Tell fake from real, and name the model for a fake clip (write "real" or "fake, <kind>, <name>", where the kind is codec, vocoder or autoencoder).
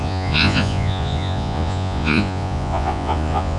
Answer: fake, vocoder, Vocos